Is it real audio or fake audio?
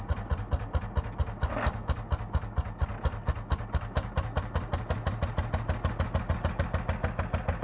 real